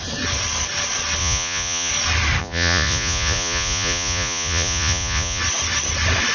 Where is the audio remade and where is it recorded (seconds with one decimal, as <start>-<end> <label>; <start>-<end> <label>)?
0.0-1.2 recorded; 1.2-1.9 remade; 1.9-2.4 recorded; 2.4-5.4 remade; 5.4-6.3 recorded